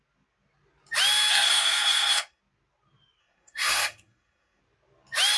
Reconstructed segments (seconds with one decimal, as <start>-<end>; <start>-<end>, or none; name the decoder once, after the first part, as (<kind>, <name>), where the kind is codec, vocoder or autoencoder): 1.3-2.4 (codec, SNAC); 3.2-4.6